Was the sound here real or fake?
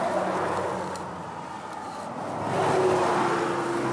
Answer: real